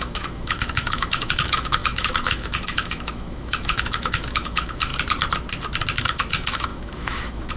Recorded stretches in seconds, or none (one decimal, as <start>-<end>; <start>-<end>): 4.9-6.0